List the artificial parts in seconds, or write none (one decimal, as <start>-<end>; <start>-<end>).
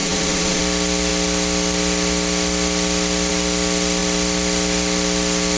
0.0-0.6